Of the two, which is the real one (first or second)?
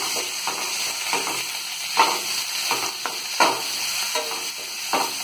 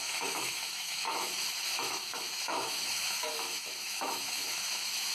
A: first